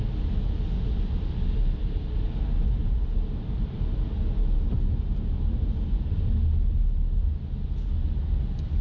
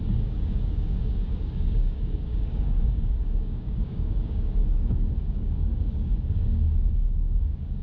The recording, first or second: first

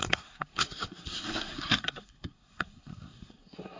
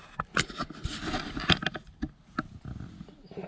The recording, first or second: second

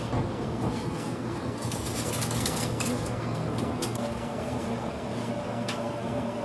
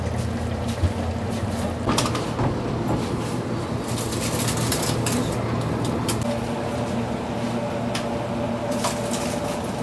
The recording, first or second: second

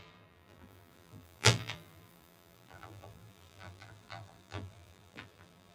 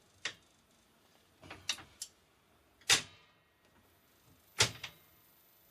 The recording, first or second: second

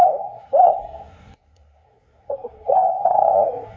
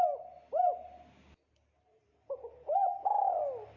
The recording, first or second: second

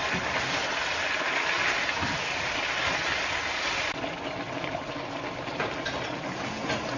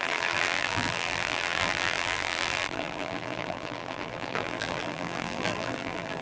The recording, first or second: first